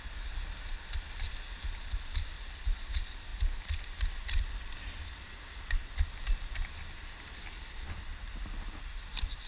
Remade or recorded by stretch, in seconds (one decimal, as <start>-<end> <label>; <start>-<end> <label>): 0.0-9.5 recorded